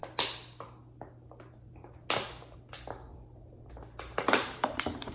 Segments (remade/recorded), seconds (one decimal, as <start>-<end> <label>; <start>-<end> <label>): 0.0-3.1 recorded; 3.1-5.1 remade